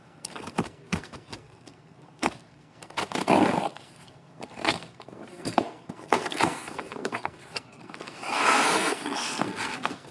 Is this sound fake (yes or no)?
yes